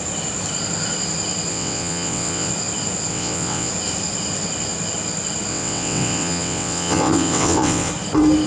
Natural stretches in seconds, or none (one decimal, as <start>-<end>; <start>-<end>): 0.0-1.5; 2.5-3.1; 3.7-5.5; 7.9-8.5